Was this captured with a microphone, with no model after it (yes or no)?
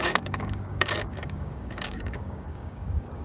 no